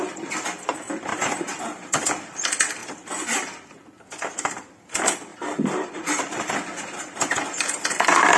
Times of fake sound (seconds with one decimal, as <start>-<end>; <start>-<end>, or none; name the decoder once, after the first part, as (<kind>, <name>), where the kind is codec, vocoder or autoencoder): 1.1-1.6 (vocoder, BigVGAN v2); 5.3-6.2